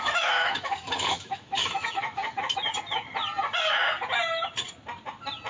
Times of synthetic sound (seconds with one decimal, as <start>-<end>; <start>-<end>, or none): 0.0-2.2